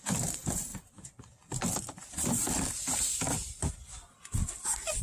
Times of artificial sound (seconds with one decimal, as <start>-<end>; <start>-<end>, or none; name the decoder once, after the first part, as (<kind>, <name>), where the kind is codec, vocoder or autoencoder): 0.7-3.7 (vocoder, BigVGAN v2); 4.4-5.0